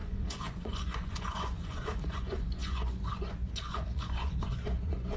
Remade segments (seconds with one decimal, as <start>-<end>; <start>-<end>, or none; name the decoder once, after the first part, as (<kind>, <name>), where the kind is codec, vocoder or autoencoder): 0.0-5.2 (vocoder, Vocos)